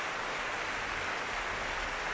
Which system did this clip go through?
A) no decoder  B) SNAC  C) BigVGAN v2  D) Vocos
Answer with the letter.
A